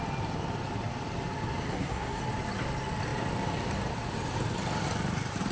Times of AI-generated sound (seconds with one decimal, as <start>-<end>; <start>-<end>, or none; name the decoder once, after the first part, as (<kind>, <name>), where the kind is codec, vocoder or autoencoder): 1.7-2.2 (codec, SNAC)